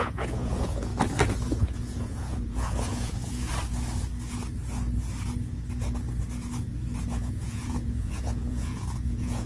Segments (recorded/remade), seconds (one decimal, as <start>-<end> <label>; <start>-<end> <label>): 0.0-0.9 remade; 0.9-1.6 recorded; 1.6-3.5 remade; 3.5-7.1 recorded; 7.1-9.5 remade